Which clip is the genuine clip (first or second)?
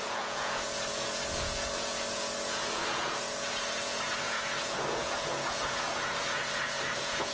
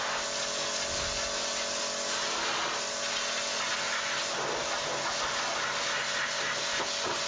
second